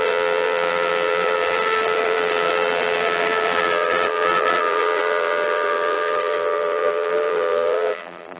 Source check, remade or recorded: remade